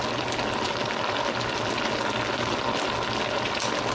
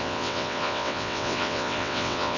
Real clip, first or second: first